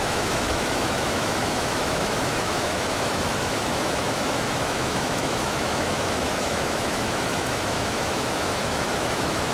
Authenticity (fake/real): fake